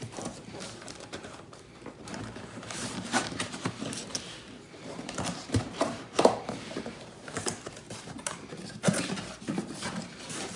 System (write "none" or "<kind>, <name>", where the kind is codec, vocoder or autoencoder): vocoder, BigVGAN v2